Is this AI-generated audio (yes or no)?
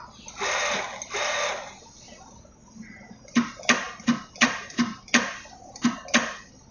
no